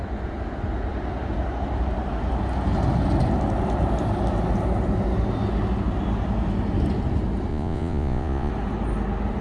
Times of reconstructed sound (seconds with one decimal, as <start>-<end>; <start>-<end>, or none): 7.5-8.5